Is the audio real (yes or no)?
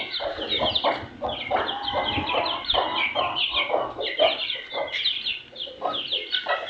yes